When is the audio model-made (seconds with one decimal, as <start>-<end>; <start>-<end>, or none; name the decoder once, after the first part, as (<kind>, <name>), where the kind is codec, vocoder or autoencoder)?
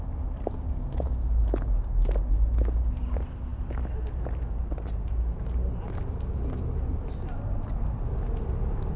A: none